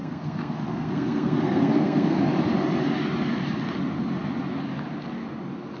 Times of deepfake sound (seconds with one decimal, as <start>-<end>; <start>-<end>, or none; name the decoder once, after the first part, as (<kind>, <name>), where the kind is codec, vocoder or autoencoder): 0.0-2.2 (codec, SNAC)